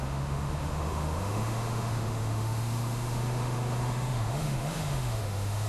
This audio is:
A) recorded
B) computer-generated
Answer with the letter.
B